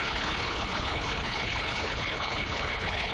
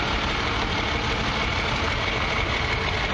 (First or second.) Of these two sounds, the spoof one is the first